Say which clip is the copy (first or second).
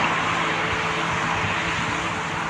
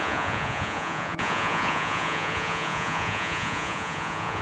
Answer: second